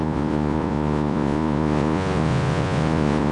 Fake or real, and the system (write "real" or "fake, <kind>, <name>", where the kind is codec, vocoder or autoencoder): fake, vocoder, Vocos